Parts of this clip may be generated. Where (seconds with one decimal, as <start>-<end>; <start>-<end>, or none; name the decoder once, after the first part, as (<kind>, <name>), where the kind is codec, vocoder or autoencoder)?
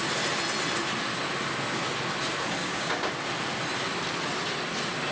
2.6-3.1 (codec, DAC)